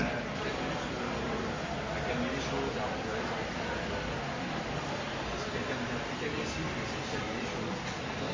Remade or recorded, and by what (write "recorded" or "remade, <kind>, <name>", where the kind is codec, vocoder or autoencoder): recorded